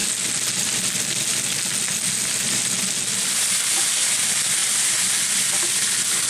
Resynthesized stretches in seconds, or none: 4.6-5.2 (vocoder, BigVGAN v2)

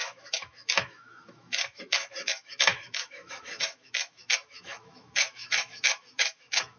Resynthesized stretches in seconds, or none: 0.0-6.8 (autoencoder, DAC-VAE)